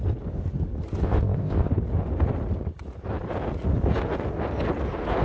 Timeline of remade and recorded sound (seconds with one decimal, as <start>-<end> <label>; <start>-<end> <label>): 0.0-1.0 recorded; 1.0-1.7 remade; 1.7-5.2 recorded